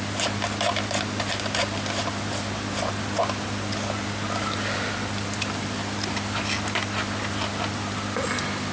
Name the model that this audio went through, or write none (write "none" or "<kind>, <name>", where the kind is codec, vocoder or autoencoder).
none